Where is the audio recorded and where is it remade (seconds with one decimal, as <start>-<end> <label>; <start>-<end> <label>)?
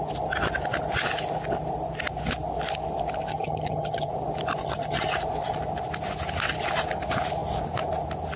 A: 0.0-3.3 recorded; 3.3-4.1 remade; 4.1-4.6 recorded; 4.6-5.1 remade; 5.1-8.4 recorded